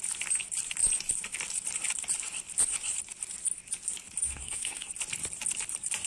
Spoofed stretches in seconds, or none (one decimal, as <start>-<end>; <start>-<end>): 4.3-4.9

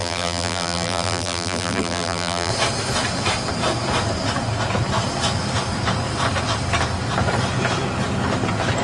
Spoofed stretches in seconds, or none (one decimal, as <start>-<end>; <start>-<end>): 0.0-2.5

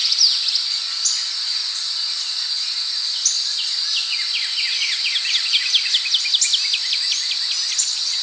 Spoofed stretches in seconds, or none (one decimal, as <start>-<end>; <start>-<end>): none

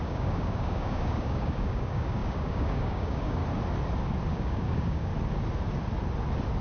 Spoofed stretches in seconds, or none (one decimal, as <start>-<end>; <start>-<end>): 0.0-3.4; 4.3-5.1

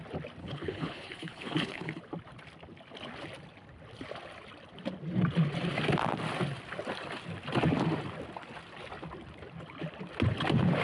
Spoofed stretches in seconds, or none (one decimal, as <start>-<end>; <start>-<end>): 0.4-2.0

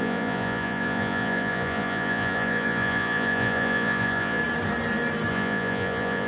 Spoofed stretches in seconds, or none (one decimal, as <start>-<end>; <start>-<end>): 0.0-4.4; 5.3-6.3

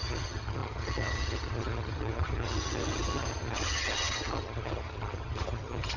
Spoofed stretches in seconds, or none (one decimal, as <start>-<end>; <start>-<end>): 0.0-6.0